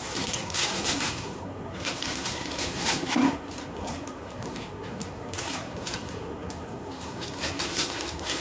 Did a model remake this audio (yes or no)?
yes